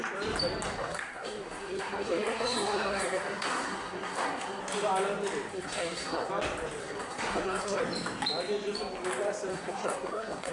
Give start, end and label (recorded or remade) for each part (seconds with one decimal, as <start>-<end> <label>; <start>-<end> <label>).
0.0-0.7 recorded; 0.7-4.6 remade; 4.6-5.5 recorded; 5.5-6.3 remade; 6.3-6.8 recorded; 6.8-7.8 remade; 7.8-9.5 recorded; 9.5-10.5 remade

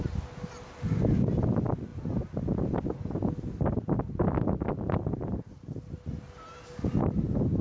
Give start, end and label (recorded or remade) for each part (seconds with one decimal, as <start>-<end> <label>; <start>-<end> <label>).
0.0-7.6 recorded